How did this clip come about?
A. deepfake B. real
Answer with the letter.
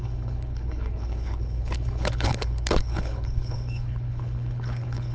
A